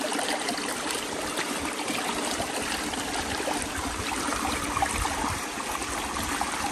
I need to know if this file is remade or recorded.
recorded